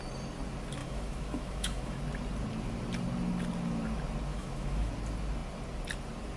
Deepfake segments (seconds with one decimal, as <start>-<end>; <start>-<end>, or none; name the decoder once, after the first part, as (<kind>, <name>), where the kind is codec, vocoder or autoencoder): 0.8-2.0 (autoencoder, DAC-VAE); 4.3-4.9